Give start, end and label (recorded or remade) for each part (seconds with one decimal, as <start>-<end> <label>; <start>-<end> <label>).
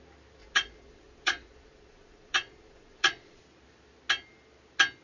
0.0-0.4 recorded; 0.4-3.4 remade; 3.4-5.0 recorded